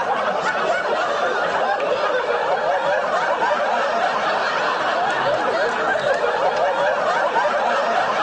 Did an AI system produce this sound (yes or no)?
no